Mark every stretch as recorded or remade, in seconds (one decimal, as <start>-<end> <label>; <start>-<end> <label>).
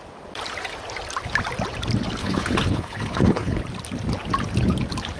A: 0.0-2.2 recorded; 2.2-3.6 remade; 3.6-5.2 recorded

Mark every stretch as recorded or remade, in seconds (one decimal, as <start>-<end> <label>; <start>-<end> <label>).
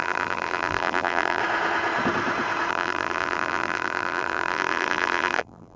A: 0.0-1.4 remade; 1.4-2.7 recorded; 2.7-5.8 remade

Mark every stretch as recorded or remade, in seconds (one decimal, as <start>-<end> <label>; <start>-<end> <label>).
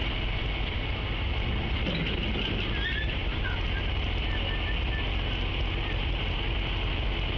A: 0.0-7.4 recorded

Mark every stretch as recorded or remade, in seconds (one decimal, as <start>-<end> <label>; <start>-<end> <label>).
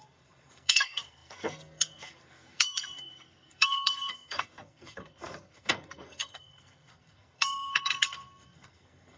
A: 0.0-9.2 remade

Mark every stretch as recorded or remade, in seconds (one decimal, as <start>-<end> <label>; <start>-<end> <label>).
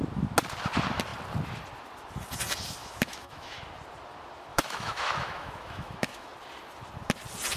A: 0.0-2.8 recorded; 2.8-3.6 remade; 3.6-4.5 recorded; 4.5-6.3 remade; 6.3-7.6 recorded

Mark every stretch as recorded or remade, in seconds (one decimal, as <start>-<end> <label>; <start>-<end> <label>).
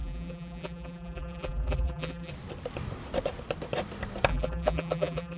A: 0.0-2.3 remade; 2.3-4.3 recorded; 4.3-5.4 remade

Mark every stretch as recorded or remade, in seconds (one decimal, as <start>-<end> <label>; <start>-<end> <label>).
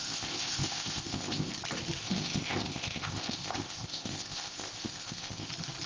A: 0.0-1.5 remade; 1.5-2.0 recorded; 2.0-5.5 remade; 5.5-5.9 recorded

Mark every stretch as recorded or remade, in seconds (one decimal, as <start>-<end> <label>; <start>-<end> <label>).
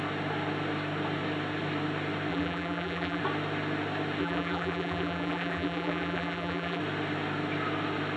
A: 0.0-2.3 recorded; 2.3-3.2 remade; 3.2-4.2 recorded; 4.2-6.8 remade; 6.8-8.2 recorded